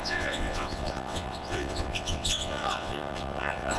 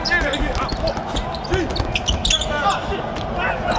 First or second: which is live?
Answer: second